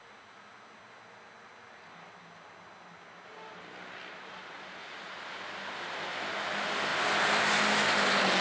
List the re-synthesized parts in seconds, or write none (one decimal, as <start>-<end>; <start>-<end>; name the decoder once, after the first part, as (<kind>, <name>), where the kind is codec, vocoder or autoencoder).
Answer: 4.8-5.5 (vocoder, Vocos)